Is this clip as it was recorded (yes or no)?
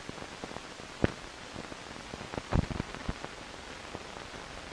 yes